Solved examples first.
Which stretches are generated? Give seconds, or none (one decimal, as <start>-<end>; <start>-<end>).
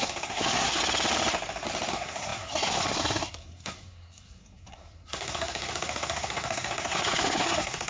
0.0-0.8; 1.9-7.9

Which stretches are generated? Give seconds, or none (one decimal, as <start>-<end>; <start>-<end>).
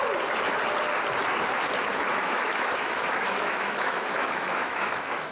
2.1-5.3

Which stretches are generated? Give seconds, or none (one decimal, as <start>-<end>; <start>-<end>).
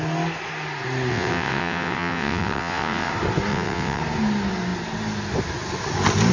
1.1-3.1; 3.5-4.0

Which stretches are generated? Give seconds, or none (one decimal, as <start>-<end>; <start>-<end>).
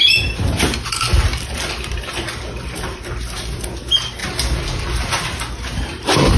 none